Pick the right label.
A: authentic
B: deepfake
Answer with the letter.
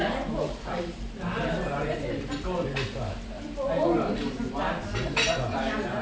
A